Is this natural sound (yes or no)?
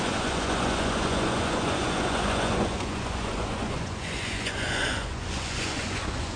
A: no